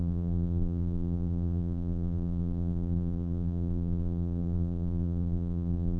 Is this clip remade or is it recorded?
remade